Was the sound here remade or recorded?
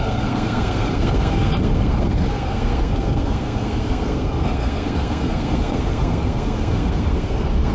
remade